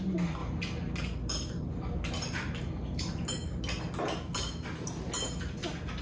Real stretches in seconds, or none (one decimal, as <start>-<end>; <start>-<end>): 0.0-6.0